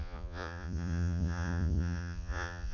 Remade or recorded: remade